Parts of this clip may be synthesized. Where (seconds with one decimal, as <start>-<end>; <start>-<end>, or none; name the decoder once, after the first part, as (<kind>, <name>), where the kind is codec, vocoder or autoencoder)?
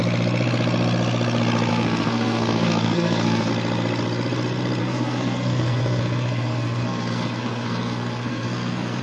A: 1.7-3.5 (codec, SNAC); 4.8-9.0